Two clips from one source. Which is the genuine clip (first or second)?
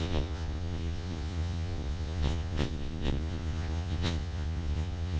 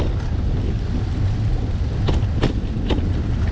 second